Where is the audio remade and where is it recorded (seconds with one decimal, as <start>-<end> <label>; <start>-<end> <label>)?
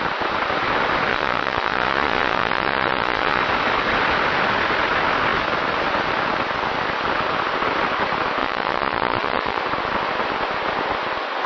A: 0.0-1.1 recorded; 1.1-3.4 remade; 3.4-8.4 recorded; 8.4-9.6 remade; 9.6-11.5 recorded